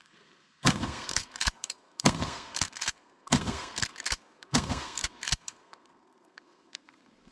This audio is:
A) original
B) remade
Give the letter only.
B